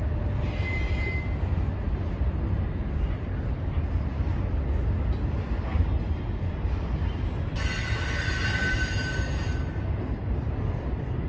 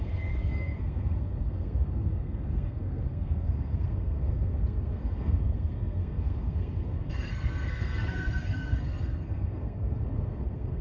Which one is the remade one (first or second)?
second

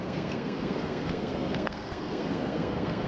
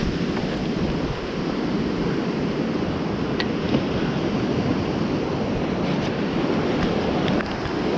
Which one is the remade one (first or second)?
first